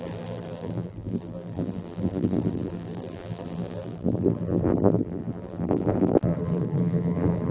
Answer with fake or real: fake